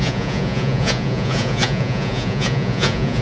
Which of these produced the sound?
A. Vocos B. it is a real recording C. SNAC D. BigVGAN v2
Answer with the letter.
A